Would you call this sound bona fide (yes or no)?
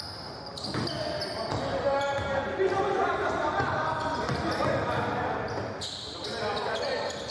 yes